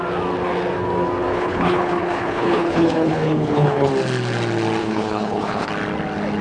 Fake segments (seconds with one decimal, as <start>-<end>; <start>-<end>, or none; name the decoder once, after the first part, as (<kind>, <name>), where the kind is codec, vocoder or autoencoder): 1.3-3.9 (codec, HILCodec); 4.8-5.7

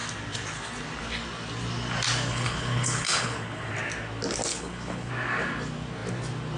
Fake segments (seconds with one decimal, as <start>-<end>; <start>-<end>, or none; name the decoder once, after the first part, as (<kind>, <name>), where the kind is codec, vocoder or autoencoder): 2.3-3.7 (codec, HILCodec); 4.5-5.1

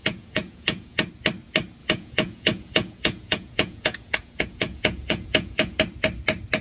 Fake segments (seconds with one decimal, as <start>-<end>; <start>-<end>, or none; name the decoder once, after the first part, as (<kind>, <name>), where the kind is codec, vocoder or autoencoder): 0.0-1.1 (vocoder, Vocos); 1.8-5.8

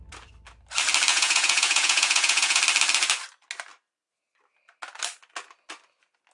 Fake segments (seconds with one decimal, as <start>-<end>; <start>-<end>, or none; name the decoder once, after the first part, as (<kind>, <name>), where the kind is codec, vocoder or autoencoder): 1.1-2.6 (vocoder, Vocos)

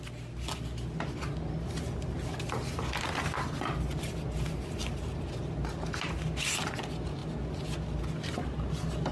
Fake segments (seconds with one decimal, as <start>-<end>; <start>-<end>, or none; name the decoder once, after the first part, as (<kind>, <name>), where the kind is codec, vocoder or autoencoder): none

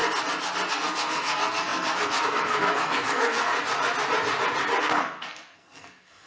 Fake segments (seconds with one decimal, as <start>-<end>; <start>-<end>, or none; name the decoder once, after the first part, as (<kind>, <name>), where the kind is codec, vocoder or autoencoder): 0.7-3.5 (codec, SNAC); 4.8-6.3